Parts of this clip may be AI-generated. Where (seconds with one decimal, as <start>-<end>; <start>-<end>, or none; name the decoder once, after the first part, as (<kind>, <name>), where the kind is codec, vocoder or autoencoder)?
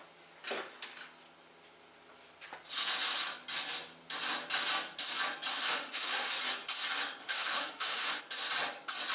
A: 5.5-6.3 (autoencoder, DAC-VAE); 7.2-8.2